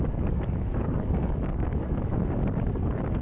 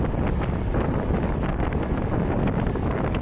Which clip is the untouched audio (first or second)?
second